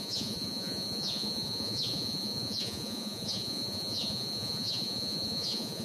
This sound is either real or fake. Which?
fake